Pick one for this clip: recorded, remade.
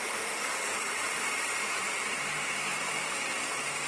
remade